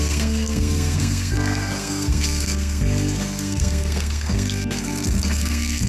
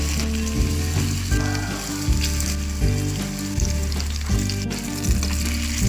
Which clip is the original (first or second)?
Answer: second